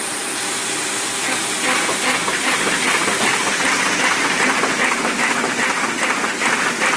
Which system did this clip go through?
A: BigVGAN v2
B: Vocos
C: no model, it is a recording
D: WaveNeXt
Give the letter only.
C